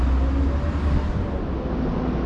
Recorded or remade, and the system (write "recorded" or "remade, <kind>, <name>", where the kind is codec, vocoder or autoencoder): recorded